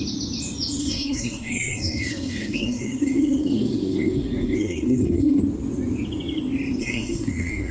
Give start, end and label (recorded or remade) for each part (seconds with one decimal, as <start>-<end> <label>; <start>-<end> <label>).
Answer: 0.0-0.8 recorded; 0.8-5.4 remade; 5.4-6.8 recorded; 6.8-7.7 remade